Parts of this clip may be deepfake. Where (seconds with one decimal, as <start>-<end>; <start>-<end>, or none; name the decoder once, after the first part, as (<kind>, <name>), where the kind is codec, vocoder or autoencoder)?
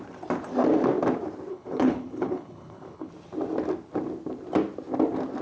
1.5-3.1 (codec, HILCodec)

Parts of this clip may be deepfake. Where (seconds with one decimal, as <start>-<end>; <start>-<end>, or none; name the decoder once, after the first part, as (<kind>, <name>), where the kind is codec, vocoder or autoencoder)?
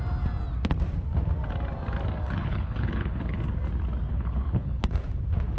2.4-3.4 (codec, HILCodec); 4.1-4.8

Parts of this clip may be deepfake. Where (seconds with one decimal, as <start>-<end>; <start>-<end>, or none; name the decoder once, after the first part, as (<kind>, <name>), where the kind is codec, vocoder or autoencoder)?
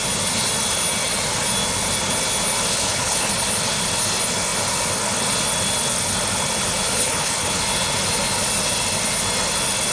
2.7-3.3 (codec, HILCodec); 7.0-7.6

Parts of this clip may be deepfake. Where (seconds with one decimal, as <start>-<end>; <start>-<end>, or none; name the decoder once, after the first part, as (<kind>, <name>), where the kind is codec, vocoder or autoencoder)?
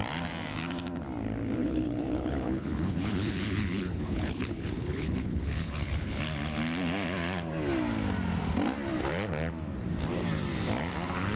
1.6-6.2 (codec, HILCodec)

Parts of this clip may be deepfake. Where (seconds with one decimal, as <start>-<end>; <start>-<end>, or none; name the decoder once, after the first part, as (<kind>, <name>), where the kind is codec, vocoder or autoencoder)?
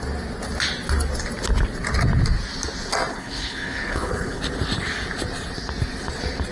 3.1-4.4 (codec, HILCodec)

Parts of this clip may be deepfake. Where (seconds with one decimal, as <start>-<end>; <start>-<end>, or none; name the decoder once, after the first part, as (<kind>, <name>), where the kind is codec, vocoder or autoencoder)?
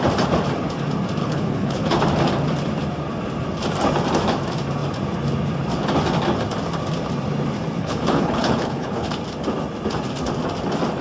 1.2-2.0 (codec, HILCodec); 7.8-9.1